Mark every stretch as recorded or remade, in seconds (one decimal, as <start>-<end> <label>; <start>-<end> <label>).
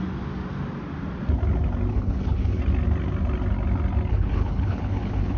0.0-1.9 recorded; 1.9-2.6 remade; 2.6-4.1 recorded; 4.1-5.4 remade